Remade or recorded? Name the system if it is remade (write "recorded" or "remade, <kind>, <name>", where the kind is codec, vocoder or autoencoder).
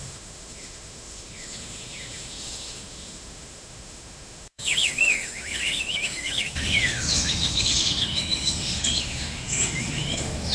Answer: remade, autoencoder, DAC-VAE